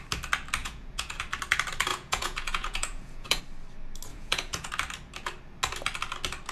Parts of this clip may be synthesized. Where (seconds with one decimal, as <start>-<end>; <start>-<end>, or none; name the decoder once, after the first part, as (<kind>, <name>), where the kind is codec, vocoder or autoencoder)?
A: 0.6-1.2 (vocoder, Vocos); 1.9-3.4; 4.1-4.7